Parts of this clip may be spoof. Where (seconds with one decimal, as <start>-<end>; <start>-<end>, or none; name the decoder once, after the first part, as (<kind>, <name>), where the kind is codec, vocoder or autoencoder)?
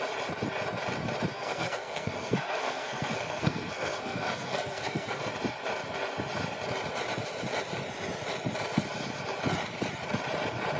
1.3-5.3 (codec, SNAC)